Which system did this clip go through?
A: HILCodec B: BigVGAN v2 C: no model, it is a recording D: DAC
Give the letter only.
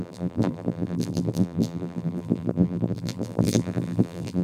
B